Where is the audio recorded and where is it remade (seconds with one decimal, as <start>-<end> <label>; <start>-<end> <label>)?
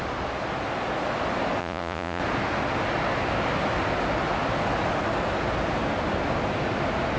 0.0-1.6 recorded; 1.6-2.2 remade; 2.2-7.2 recorded